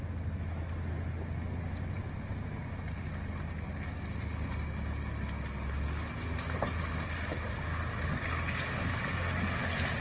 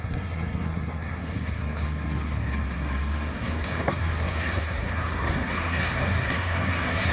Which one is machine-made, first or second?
second